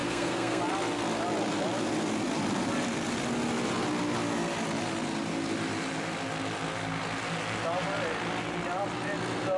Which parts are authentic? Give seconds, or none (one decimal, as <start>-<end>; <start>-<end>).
0.6-9.6